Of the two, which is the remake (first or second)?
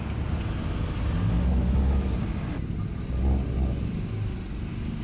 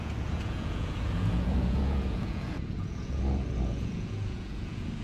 second